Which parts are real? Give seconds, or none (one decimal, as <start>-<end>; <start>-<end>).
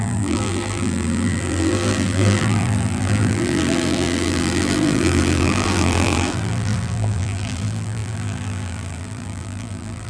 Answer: none